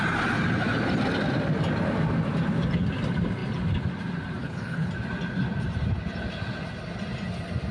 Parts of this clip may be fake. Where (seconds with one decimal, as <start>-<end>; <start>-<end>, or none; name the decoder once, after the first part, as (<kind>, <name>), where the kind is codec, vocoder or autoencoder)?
4.4-4.9 (codec, HILCodec)